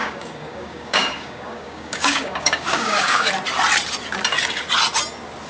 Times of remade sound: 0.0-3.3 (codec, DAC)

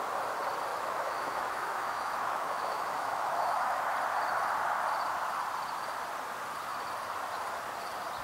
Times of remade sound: 0.7-3.8 (autoencoder, DAC-VAE)